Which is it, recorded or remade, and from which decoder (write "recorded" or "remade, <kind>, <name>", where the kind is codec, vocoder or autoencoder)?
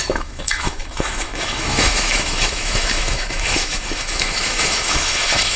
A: remade, autoencoder, DAC-VAE